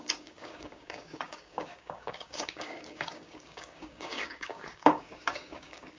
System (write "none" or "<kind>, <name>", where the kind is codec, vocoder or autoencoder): codec, DAC